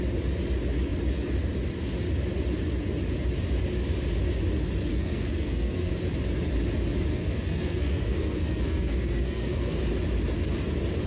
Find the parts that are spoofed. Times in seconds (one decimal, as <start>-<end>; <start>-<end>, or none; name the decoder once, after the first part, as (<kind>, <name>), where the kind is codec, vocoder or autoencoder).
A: 4.9-5.9 (codec, SNAC); 7.1-9.8